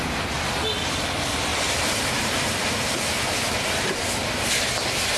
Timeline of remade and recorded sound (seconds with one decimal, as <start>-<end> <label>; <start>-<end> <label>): 0.0-1.5 recorded; 1.5-4.5 remade; 4.5-5.2 recorded